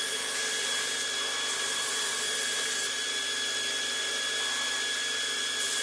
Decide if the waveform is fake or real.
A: fake